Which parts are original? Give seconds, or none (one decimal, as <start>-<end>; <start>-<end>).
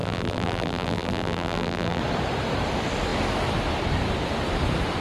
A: 2.0-5.0